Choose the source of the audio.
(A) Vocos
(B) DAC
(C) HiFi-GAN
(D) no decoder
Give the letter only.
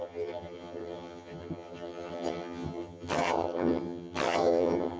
C